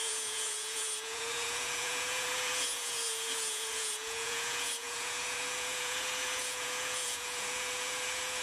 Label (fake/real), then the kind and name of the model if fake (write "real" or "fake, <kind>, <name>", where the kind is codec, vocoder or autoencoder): fake, vocoder, Vocos